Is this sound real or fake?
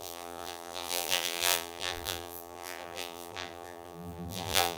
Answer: fake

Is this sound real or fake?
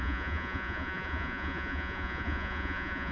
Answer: fake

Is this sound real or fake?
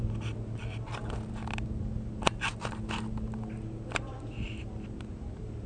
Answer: real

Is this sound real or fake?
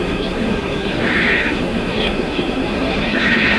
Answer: fake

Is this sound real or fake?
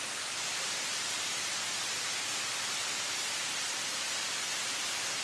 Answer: real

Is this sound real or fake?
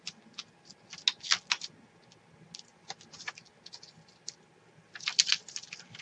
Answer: real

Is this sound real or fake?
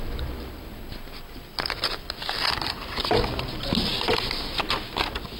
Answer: real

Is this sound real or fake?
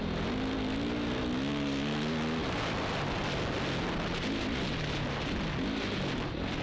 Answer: real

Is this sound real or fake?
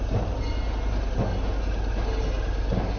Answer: real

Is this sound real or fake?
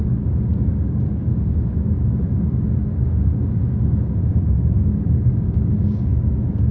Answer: fake